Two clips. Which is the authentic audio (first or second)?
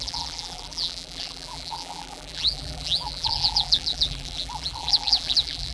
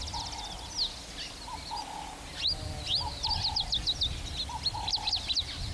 second